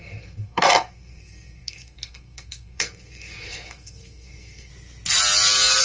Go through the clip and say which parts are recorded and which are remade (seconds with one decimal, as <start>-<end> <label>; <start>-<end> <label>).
0.0-4.7 remade; 4.7-5.8 recorded